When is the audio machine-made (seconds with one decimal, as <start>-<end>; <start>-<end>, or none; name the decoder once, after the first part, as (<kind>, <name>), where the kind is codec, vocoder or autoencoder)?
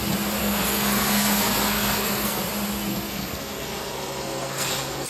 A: 0.4-2.4 (codec, SNAC); 2.9-5.1